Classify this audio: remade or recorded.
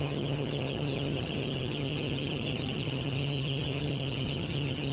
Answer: remade